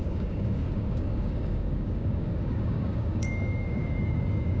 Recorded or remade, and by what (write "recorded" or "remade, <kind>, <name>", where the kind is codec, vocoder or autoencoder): remade, codec, DAC